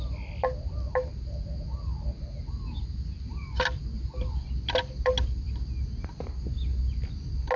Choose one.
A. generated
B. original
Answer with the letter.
B